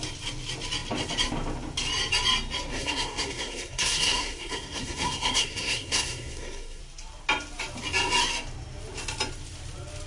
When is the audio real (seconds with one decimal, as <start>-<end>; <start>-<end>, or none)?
0.0-2.7; 6.8-10.1